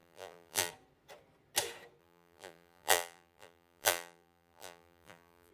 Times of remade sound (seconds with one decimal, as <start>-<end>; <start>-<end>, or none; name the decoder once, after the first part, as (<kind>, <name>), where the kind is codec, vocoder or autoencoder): 0.0-0.7 (vocoder, BigVGAN v2); 2.0-5.5